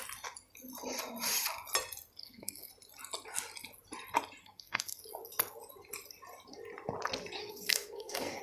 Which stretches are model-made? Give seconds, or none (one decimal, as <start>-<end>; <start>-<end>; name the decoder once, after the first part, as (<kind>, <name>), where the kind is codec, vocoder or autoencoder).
2.2-2.7 (codec, SNAC); 4.4-5.0; 7.4-8.4